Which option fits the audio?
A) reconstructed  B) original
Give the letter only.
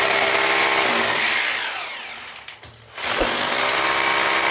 B